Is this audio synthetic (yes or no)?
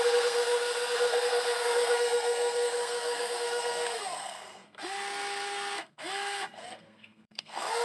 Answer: yes